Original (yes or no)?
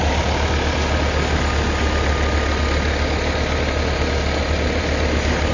yes